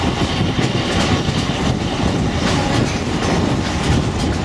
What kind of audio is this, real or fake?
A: real